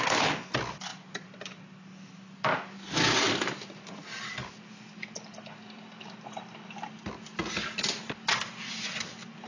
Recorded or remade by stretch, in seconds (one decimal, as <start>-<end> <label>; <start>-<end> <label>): 0.0-9.5 recorded